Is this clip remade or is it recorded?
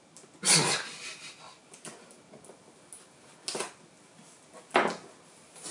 recorded